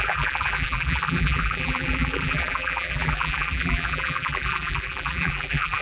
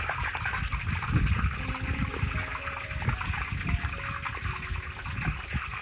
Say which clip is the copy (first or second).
first